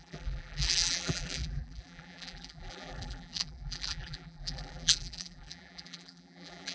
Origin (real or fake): fake